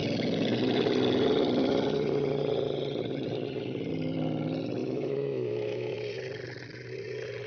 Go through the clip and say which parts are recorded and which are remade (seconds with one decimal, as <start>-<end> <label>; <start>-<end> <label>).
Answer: 0.0-4.8 recorded; 4.8-5.9 remade; 5.9-7.5 recorded